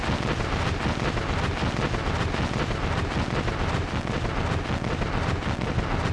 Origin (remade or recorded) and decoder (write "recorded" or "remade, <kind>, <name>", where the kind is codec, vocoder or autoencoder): recorded